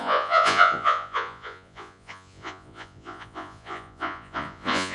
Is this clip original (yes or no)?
no